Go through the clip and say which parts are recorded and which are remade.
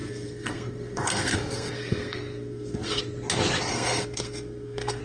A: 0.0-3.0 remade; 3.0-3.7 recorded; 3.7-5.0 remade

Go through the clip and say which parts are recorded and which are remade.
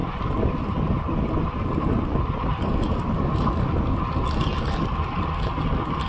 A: 0.0-3.7 remade; 3.7-6.1 recorded